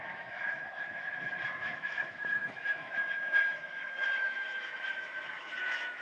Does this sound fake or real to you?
fake